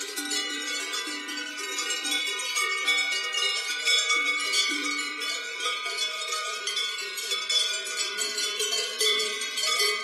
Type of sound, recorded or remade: remade